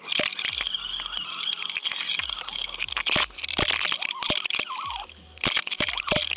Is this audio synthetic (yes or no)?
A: no